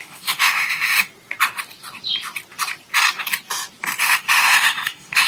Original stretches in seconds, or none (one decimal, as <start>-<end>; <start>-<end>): 1.1-4.0